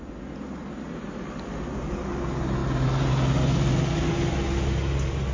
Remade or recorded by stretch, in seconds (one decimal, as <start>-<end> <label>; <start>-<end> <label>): 0.0-5.3 recorded